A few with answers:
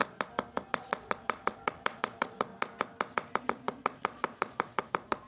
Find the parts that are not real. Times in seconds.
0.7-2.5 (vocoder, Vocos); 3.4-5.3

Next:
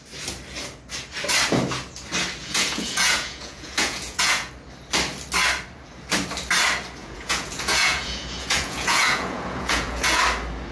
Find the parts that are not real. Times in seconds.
2.4-4.5 (vocoder, Vocos); 7.0-10.2